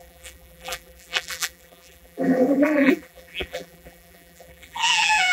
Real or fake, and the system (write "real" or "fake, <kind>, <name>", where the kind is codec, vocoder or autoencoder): fake, vocoder, BigVGAN v2